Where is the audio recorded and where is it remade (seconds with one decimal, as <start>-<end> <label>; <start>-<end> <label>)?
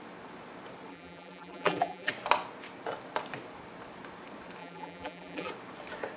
0.0-0.9 recorded; 0.9-2.1 remade; 2.1-4.6 recorded; 4.6-5.5 remade; 5.5-6.2 recorded